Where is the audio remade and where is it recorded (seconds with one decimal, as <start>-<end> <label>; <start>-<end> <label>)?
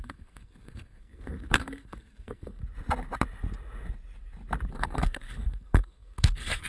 0.0-2.6 remade; 2.6-4.7 recorded; 4.7-6.7 remade